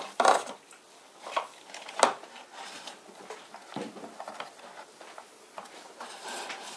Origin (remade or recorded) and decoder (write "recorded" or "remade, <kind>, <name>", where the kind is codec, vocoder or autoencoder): recorded